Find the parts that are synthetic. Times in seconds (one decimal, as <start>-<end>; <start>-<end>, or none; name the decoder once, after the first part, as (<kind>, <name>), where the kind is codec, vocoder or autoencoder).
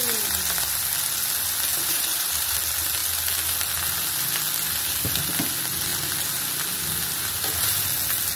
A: 1.7-2.6 (vocoder, BigVGAN v2)